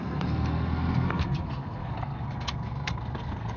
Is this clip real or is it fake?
fake